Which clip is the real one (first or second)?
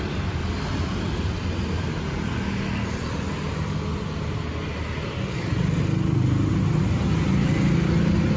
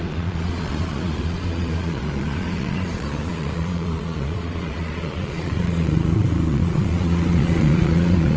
first